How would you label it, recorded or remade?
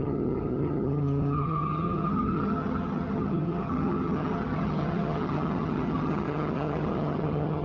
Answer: remade